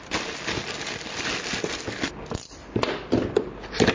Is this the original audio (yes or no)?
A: yes